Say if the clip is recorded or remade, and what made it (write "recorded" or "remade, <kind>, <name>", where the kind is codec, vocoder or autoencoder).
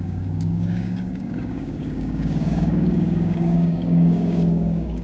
remade, codec, DAC